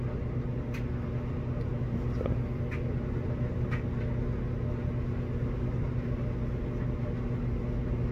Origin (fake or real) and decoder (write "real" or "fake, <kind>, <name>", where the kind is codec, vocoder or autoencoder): real